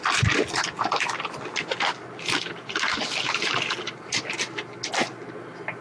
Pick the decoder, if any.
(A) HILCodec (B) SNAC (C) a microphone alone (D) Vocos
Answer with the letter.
C